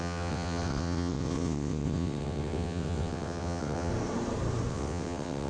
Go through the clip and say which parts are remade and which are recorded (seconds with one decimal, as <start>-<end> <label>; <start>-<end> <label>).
0.0-3.9 remade; 3.9-4.7 recorded; 4.7-5.5 remade